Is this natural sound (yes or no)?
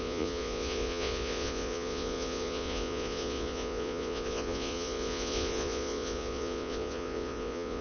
no